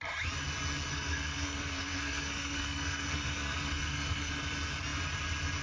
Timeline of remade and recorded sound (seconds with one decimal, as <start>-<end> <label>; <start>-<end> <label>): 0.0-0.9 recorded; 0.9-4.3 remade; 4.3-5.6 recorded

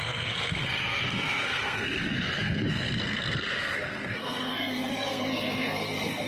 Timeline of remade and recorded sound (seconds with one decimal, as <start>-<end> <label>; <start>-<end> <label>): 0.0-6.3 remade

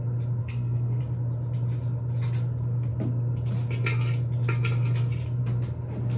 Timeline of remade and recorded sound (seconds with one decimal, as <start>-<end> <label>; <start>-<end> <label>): 0.0-0.4 recorded; 0.4-1.0 remade; 1.0-6.2 recorded

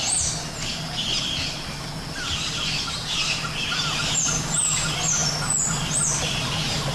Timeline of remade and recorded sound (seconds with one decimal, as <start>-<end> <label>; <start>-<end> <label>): 0.0-6.9 recorded

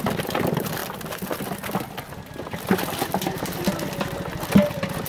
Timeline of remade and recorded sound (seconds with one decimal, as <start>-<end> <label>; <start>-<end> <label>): 0.0-5.1 recorded

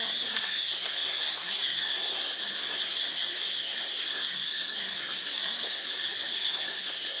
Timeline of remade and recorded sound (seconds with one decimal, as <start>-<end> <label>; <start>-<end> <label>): 0.0-7.2 remade

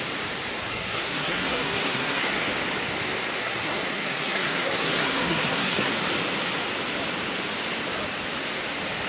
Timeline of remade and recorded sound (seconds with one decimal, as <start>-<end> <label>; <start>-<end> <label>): 0.0-0.7 recorded; 0.7-2.3 remade; 2.3-3.4 recorded; 3.4-5.9 remade; 5.9-9.1 recorded